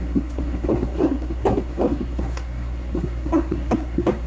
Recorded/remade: remade